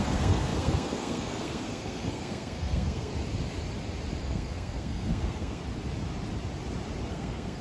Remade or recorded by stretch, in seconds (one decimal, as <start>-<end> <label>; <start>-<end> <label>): 0.0-3.1 remade; 3.1-4.2 recorded; 4.2-5.6 remade; 5.6-7.1 recorded; 7.1-7.6 remade